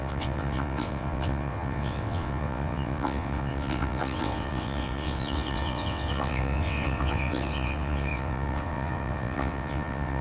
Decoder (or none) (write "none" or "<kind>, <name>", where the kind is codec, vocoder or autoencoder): vocoder, WaveNeXt